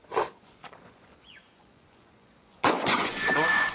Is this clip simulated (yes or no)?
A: yes